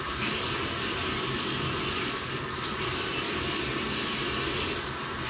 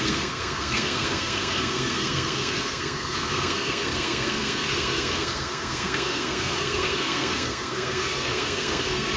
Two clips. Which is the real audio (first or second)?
first